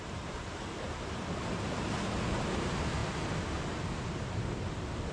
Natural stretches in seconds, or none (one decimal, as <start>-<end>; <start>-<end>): 3.0-4.1